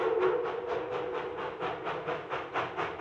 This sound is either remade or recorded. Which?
recorded